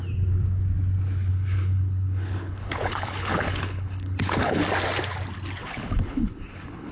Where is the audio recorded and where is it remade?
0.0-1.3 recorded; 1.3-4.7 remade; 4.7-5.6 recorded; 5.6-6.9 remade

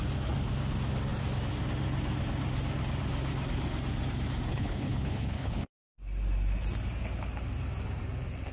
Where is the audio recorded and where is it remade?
0.0-4.5 recorded; 4.5-5.7 remade; 5.7-8.5 recorded

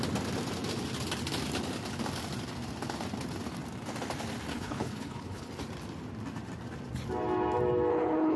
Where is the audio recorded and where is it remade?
0.0-4.5 recorded; 4.5-5.5 remade; 5.5-7.9 recorded; 7.9-8.4 remade

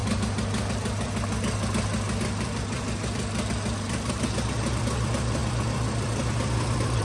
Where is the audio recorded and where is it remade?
0.0-7.0 recorded

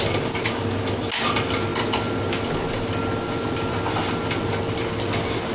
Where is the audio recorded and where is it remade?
0.0-5.5 recorded

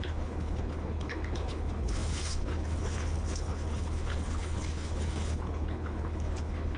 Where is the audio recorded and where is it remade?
0.0-6.8 remade